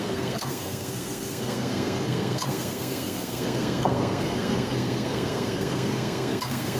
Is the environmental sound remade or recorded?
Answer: remade